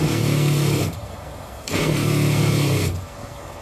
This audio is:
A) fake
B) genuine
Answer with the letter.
A